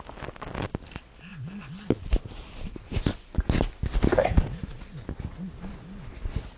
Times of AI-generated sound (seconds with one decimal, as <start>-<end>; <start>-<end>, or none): none